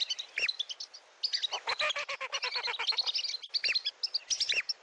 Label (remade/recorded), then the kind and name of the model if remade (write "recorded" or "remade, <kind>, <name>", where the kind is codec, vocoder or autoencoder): recorded